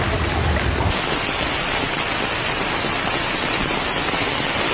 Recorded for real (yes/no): yes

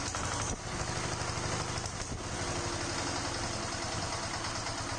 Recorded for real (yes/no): yes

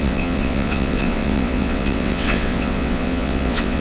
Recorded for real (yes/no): no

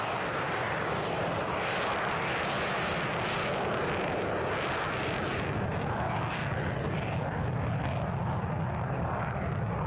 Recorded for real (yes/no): yes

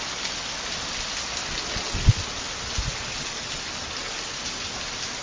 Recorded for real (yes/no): yes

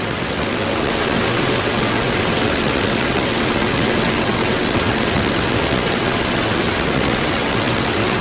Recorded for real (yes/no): no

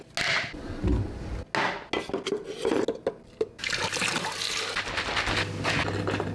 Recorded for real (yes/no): yes